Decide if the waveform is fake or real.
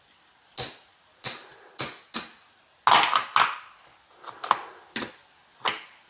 real